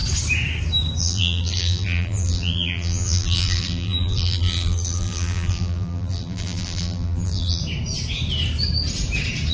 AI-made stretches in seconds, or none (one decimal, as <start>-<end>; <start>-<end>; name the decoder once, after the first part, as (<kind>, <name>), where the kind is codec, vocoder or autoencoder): 1.0-7.6 (vocoder, BigVGAN v2)